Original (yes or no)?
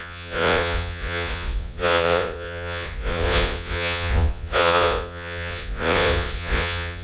no